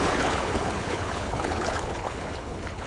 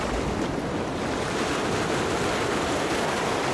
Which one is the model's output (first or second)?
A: first